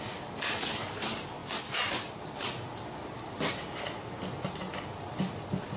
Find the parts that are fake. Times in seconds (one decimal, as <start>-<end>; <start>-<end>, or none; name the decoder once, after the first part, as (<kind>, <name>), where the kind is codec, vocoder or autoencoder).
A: none